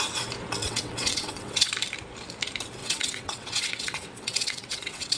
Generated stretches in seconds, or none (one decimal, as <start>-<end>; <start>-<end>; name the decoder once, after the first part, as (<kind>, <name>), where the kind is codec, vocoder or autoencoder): 0.6-1.7 (vocoder, WaveNeXt); 2.8-5.2